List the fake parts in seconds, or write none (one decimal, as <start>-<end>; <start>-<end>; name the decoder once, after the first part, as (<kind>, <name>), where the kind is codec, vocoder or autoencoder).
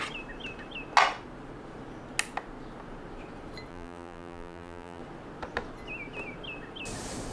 3.7-5.0 (vocoder, BigVGAN v2)